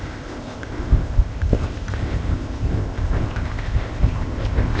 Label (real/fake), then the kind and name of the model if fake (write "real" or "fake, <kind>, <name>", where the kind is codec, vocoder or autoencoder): fake, codec, ZipCodec